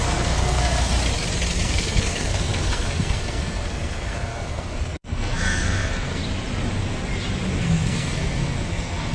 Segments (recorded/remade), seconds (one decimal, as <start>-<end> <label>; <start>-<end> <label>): 0.0-0.9 remade; 0.9-1.5 recorded; 1.5-6.2 remade; 6.2-7.5 recorded; 7.5-9.1 remade